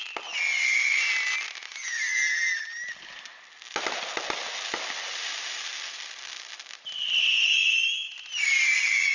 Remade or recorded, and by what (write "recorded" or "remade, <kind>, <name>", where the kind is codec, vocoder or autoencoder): recorded